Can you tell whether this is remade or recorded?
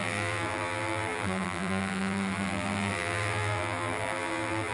remade